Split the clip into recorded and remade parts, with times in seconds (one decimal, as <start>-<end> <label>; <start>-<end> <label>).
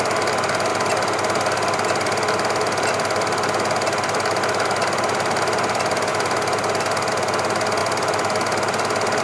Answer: 0.0-9.2 recorded